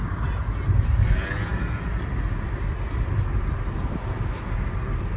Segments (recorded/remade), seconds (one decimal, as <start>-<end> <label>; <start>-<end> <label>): 0.0-5.2 recorded